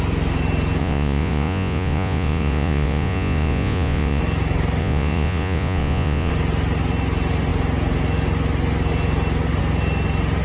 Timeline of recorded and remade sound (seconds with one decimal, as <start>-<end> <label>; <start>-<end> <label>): 0.0-0.8 recorded; 0.8-4.2 remade; 4.2-4.8 recorded; 4.8-6.3 remade; 6.3-10.4 recorded